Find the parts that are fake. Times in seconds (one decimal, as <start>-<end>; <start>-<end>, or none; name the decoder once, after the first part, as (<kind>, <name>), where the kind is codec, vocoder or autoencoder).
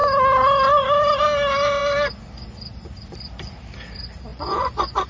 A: 4.3-5.1 (vocoder, Vocos)